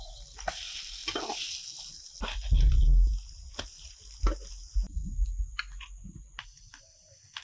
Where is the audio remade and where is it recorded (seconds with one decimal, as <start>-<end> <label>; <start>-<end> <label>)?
0.0-7.4 recorded